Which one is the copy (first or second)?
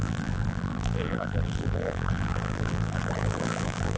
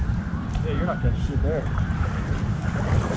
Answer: first